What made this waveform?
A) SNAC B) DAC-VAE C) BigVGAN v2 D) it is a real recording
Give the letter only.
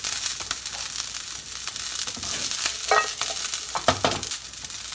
D